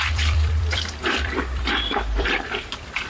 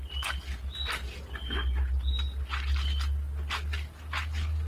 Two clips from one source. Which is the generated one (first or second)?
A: first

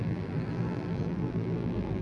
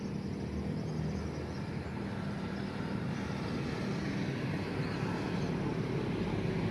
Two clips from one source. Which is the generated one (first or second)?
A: first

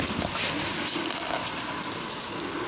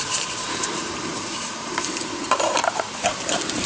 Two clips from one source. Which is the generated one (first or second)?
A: second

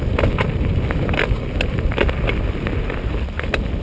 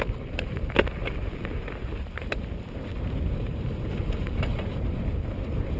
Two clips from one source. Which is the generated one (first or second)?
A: second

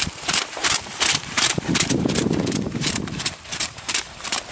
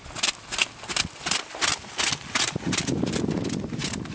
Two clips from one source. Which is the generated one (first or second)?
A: first